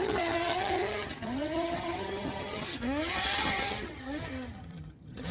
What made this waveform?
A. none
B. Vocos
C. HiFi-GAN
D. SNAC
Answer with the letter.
C